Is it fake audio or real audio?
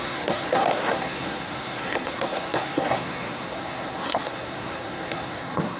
fake